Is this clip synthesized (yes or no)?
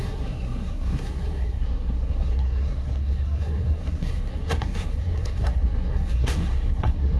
yes